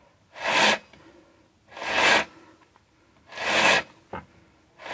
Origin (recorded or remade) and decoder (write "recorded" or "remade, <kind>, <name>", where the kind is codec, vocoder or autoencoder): recorded